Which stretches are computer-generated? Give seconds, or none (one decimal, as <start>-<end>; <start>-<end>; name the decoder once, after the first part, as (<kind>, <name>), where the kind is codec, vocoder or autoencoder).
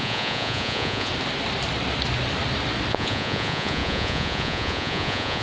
0.0-1.1 (vocoder, Vocos); 2.9-5.4